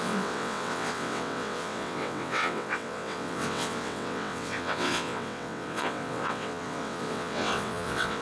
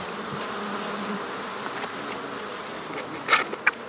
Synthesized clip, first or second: first